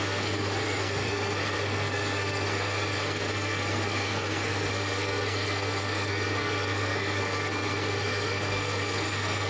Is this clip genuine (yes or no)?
no